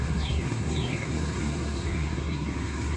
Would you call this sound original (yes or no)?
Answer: no